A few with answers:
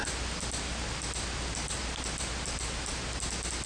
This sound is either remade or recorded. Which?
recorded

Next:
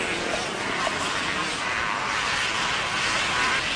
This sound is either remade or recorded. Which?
recorded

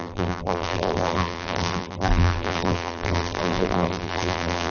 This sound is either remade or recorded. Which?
remade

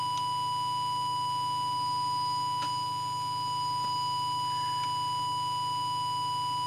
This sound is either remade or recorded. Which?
recorded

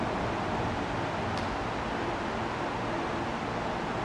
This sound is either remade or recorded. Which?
recorded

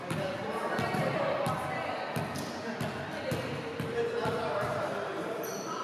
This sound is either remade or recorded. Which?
recorded